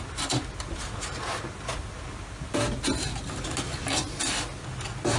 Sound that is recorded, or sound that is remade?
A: recorded